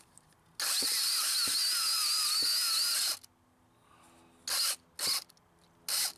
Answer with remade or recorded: recorded